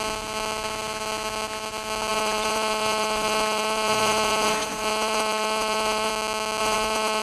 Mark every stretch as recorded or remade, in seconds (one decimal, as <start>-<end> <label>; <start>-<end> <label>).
0.0-2.1 recorded; 2.1-6.1 remade; 6.1-6.6 recorded; 6.6-7.2 remade